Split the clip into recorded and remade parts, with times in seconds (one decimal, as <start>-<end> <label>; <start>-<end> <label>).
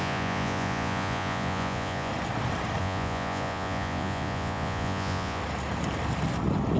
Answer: 0.0-2.1 remade; 2.1-2.8 recorded; 2.8-5.4 remade; 5.4-6.8 recorded